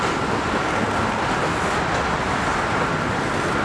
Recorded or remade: recorded